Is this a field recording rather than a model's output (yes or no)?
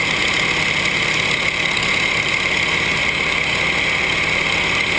yes